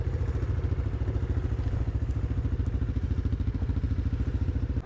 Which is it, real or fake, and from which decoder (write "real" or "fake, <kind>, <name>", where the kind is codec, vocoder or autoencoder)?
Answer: real